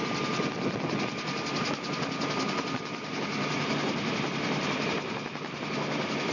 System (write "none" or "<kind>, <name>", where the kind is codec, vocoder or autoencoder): none